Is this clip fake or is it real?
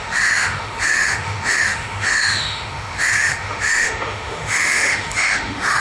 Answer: fake